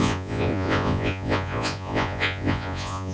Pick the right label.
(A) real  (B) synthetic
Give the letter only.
B